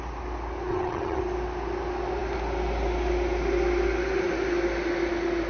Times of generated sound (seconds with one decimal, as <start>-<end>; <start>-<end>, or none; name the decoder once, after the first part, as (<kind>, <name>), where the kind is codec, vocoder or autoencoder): 0.7-1.2 (vocoder, HiFi-GAN)